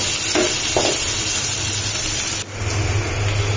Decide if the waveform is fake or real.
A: real